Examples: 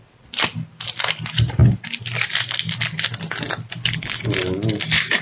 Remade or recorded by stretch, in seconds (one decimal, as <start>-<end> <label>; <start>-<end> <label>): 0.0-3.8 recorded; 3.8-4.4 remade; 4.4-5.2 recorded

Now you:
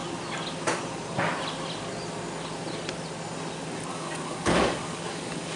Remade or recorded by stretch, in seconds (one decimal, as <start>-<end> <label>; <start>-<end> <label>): 0.0-3.9 recorded; 3.9-5.6 remade

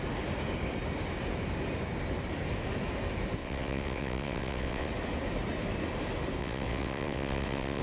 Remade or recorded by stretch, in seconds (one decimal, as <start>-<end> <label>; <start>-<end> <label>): 0.0-3.4 recorded; 3.4-4.9 remade; 4.9-6.4 recorded; 6.4-7.8 remade

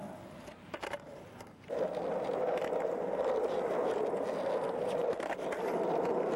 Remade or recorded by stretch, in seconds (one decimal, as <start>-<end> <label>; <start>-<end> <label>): 0.0-6.4 recorded

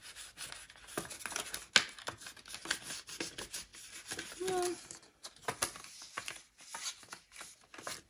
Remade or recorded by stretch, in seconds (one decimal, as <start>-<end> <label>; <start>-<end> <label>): 0.0-8.1 recorded

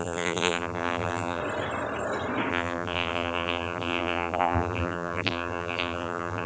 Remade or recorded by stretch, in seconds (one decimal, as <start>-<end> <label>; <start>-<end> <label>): 0.0-1.4 remade; 1.4-2.5 recorded; 2.5-6.5 remade

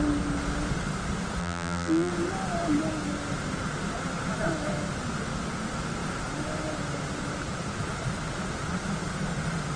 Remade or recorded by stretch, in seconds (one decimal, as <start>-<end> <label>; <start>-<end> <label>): 0.0-1.4 recorded; 1.4-2.1 remade; 2.1-9.8 recorded

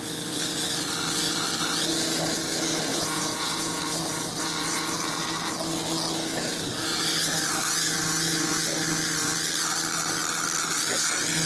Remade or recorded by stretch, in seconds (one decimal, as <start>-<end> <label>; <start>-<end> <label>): 0.0-2.9 recorded; 2.9-3.8 remade; 3.8-11.5 recorded